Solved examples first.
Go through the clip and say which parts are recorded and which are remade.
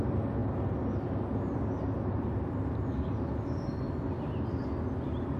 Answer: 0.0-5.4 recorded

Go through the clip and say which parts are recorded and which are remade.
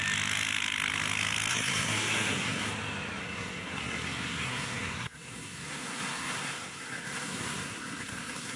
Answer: 0.0-1.5 recorded; 1.5-2.7 remade; 2.7-3.2 recorded; 3.2-8.6 remade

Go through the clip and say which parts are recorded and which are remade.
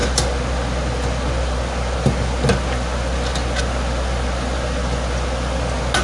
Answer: 0.0-6.0 recorded